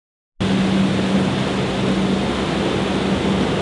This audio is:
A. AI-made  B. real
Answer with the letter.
B